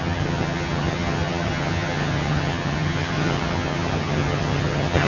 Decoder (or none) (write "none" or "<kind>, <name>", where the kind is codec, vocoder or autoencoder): vocoder, HiFi-GAN